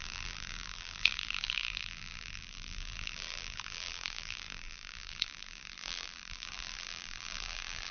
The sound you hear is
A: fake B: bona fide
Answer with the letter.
A